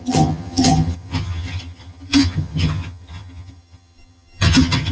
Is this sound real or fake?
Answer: fake